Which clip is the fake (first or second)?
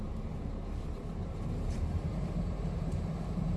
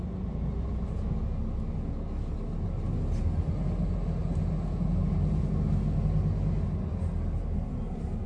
first